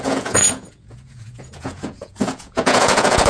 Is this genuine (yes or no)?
no